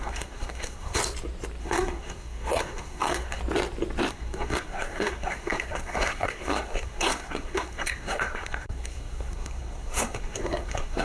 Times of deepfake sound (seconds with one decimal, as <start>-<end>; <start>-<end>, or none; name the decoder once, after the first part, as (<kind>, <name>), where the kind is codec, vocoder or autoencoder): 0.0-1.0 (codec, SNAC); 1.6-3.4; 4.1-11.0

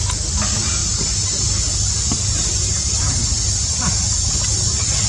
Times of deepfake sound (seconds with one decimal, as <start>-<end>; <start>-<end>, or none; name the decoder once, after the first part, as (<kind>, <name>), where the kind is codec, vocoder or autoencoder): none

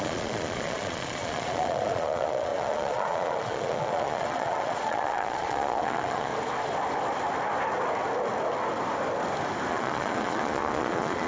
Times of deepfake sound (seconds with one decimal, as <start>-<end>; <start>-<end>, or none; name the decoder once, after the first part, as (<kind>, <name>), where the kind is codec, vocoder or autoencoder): 0.0-6.3 (vocoder, Vocos); 9.7-11.3